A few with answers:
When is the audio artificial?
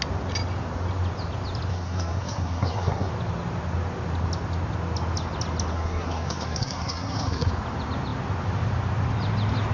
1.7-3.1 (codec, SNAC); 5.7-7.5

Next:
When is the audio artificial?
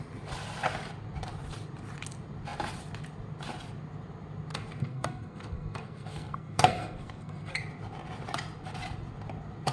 4.5-7.6 (codec, SNAC)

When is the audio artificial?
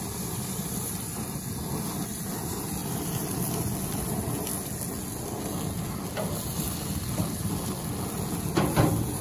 none